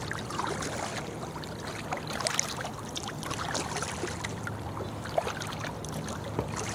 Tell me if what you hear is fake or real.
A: real